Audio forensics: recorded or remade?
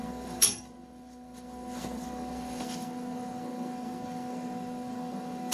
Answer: remade